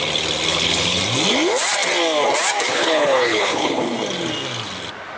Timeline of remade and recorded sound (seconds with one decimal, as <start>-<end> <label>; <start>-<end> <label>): 0.0-0.5 recorded; 0.5-1.0 remade; 1.0-2.7 recorded; 2.7-3.8 remade; 3.8-5.2 recorded